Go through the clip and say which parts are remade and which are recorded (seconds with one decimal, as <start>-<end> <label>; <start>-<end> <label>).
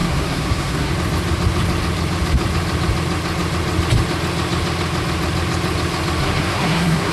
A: 0.0-0.9 remade; 0.9-6.2 recorded; 6.2-7.1 remade